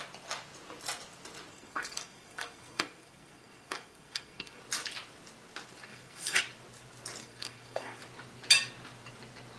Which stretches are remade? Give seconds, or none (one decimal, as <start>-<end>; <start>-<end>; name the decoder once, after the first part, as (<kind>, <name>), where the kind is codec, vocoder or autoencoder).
1.5-4.6 (codec, SNAC); 5.9-6.4; 7.2-8.0

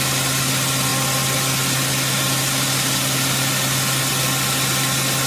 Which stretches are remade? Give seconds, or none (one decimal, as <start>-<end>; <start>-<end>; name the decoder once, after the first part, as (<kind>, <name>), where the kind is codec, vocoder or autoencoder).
none

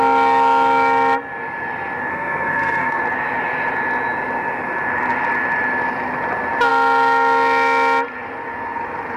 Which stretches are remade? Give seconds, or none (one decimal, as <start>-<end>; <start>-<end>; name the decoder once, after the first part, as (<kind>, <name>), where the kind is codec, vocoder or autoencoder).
2.1-3.0 (codec, SNAC)

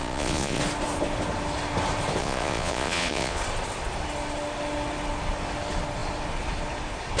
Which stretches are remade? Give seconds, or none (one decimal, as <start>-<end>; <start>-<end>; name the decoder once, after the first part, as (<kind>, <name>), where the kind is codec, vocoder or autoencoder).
0.0-0.6 (vocoder, Vocos); 2.2-3.4

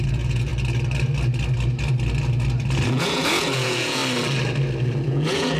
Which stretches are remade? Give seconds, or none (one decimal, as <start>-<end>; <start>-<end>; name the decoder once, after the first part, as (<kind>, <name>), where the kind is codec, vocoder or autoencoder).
0.0-0.5 (vocoder, Vocos); 2.9-4.0; 5.1-5.6

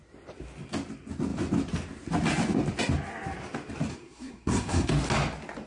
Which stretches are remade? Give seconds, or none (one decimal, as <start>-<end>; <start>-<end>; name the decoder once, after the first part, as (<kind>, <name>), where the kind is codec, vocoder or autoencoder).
3.9-4.9 (codec, SNAC)

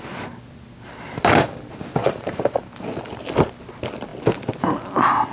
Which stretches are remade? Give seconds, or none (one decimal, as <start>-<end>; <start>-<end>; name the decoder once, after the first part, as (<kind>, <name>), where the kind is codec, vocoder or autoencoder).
2.0-3.5 (vocoder, BigVGAN v2)